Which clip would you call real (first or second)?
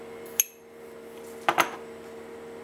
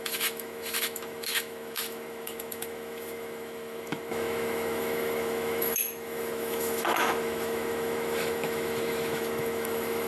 first